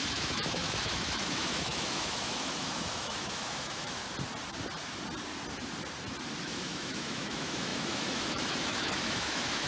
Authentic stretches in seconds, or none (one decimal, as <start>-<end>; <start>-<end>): 4.0-6.4

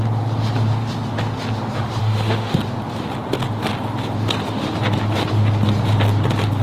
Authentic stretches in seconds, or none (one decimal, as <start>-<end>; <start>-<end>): 0.0-2.0; 2.6-6.6

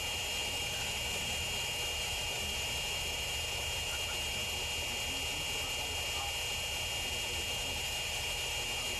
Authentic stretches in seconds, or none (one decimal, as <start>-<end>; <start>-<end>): 4.4-7.5

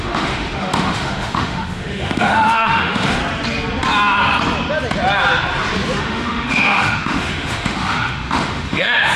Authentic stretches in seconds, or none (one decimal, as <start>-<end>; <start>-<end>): 3.2-6.0

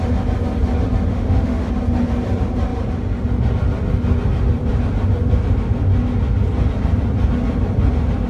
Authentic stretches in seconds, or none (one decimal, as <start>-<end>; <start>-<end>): 0.0-1.1; 1.7-8.3